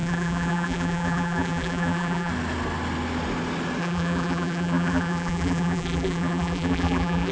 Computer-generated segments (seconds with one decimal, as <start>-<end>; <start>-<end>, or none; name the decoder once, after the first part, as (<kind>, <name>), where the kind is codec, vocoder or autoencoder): 0.0-2.3 (vocoder, BigVGAN v2); 3.8-7.3